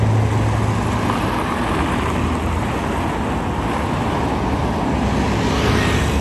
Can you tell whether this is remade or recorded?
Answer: recorded